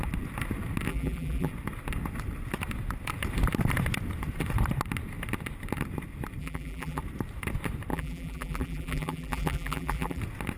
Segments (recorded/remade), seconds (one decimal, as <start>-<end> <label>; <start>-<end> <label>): 0.0-0.9 recorded; 0.9-1.5 remade; 1.5-6.4 recorded; 6.4-7.0 remade; 7.0-7.9 recorded; 7.9-10.2 remade; 10.2-10.6 recorded